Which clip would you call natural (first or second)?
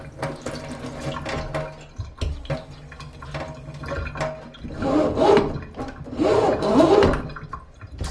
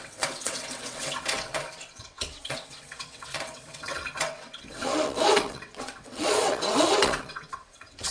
first